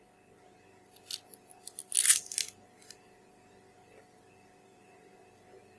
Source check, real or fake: real